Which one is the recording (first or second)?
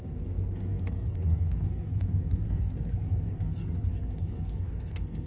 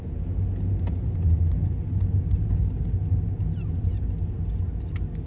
second